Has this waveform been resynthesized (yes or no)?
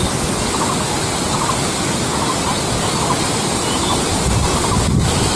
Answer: no